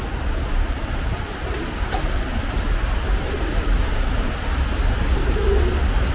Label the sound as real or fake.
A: real